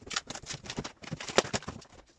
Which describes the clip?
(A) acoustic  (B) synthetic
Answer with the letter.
A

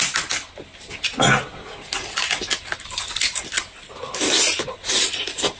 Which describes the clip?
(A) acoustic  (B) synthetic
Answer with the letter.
A